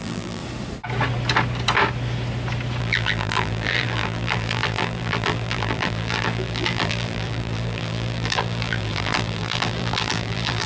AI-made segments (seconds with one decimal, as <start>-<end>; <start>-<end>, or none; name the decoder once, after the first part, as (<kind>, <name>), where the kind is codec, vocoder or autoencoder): 0.0-0.4 (vocoder, BigVGAN v2); 2.8-10.7